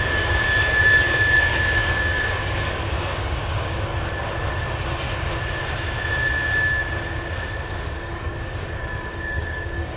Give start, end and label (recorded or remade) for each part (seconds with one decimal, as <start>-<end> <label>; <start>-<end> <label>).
0.0-3.9 remade; 3.9-7.7 recorded; 7.7-10.0 remade